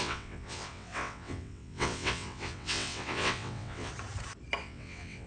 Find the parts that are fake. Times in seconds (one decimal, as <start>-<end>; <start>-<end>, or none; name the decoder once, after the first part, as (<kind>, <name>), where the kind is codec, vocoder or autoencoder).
0.0-3.9 (vocoder, WaveNeXt); 4.6-5.3